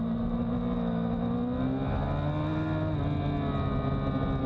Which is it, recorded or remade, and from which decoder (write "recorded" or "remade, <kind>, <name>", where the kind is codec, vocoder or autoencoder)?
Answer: recorded